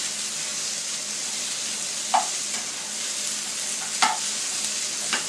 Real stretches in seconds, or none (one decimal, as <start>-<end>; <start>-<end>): 0.0-0.5; 3.5-5.3